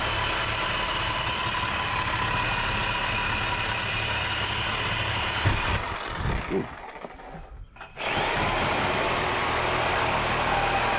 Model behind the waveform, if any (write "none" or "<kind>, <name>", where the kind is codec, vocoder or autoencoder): none